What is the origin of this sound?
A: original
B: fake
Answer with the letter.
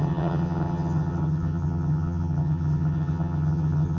B